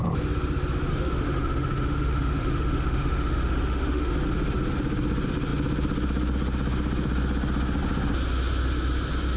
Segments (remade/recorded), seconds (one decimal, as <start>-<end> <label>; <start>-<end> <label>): 0.0-0.9 recorded; 0.9-4.1 remade; 4.1-9.4 recorded